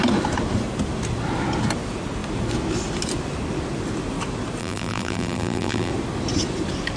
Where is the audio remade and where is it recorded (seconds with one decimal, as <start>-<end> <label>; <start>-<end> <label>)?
0.0-4.6 recorded; 4.6-5.9 remade; 5.9-7.0 recorded